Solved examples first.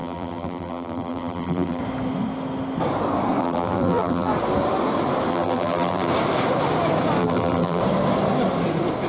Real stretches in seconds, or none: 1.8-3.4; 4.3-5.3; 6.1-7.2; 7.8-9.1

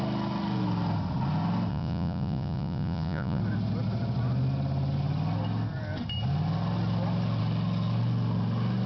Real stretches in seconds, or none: 0.0-1.7; 3.4-8.9

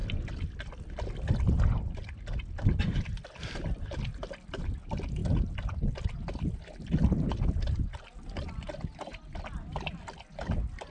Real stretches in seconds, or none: 0.0-10.9

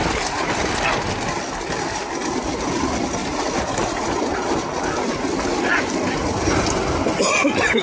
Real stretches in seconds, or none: 0.0-3.2; 4.2-7.8